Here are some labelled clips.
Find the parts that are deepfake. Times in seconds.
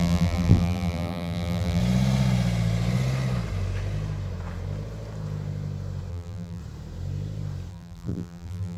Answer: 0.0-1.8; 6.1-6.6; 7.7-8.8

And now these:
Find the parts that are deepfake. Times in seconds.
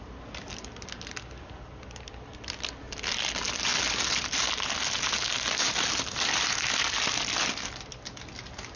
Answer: none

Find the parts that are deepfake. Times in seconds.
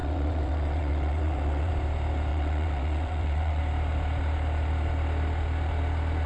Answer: 0.0-1.7; 2.3-3.6